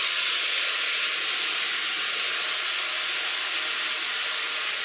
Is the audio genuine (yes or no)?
yes